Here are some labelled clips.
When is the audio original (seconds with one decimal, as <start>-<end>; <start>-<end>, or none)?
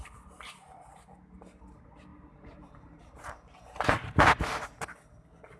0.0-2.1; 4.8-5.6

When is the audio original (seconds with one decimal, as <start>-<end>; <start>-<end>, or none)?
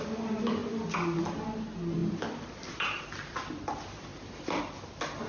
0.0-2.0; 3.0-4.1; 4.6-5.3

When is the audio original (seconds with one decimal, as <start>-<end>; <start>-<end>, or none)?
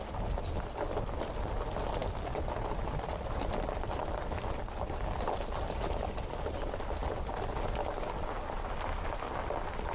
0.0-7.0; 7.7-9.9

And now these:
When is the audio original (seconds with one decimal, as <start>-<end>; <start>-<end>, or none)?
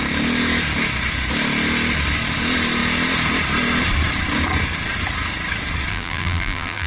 0.0-5.9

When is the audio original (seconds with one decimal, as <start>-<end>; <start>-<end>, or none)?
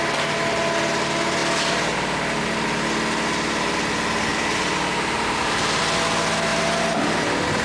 0.0-4.3; 5.8-6.5; 7.0-7.6